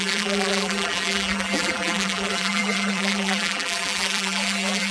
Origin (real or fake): fake